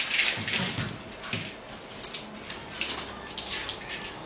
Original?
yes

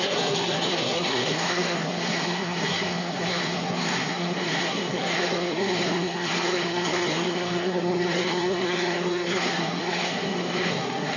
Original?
no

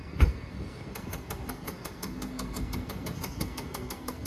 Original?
no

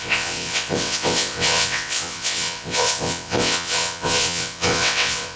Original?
no